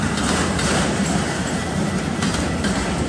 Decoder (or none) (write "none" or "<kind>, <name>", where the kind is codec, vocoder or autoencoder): none